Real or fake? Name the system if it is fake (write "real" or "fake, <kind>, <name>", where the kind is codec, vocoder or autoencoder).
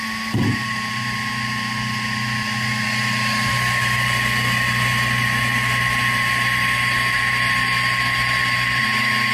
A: real